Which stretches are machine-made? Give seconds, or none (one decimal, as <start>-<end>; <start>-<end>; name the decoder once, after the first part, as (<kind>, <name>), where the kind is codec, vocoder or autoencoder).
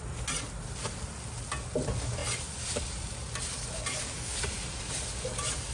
3.9-4.4 (codec, DAC)